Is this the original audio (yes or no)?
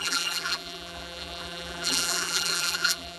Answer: no